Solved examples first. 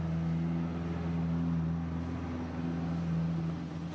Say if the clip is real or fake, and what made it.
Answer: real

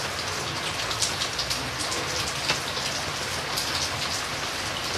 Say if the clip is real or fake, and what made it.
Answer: real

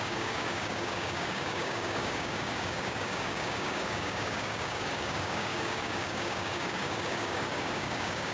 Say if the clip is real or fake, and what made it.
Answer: fake, codec, DAC